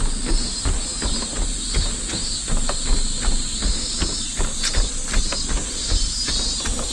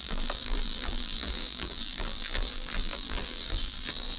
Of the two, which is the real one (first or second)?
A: first